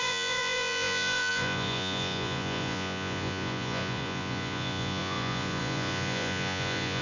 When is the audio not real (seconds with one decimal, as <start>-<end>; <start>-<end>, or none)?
0.0-7.0